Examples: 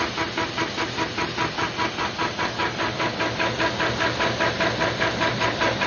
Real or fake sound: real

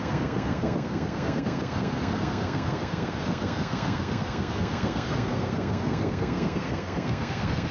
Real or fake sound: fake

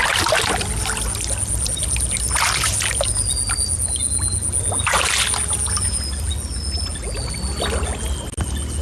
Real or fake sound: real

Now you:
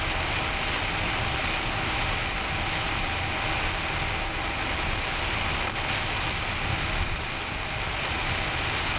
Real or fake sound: real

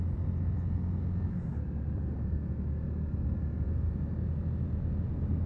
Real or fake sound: real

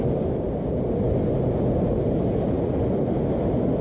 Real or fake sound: real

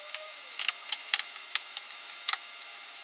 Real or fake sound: fake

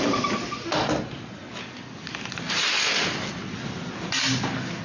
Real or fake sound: real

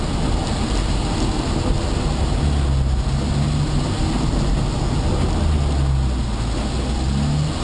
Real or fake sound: real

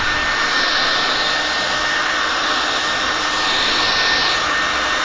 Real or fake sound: real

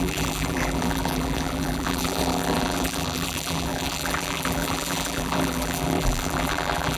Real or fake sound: fake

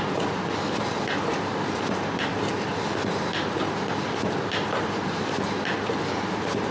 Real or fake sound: real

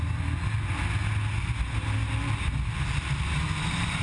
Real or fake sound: real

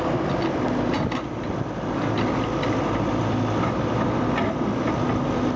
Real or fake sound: real